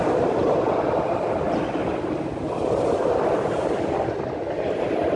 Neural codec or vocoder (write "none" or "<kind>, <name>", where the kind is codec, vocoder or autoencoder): none